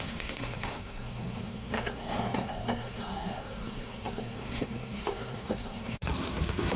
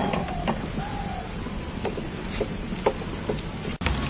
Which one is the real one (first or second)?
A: second